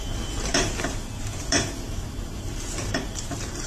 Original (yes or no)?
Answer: no